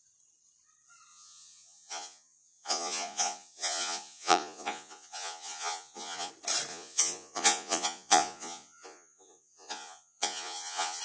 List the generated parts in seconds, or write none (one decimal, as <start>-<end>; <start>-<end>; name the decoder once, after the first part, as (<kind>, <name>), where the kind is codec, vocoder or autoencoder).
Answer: 1.1-6.3 (vocoder, Vocos); 6.7-11.0